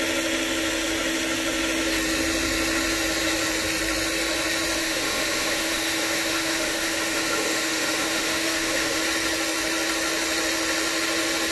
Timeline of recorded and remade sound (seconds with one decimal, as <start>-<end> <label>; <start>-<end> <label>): 0.0-4.8 recorded; 4.8-9.0 remade; 9.0-11.5 recorded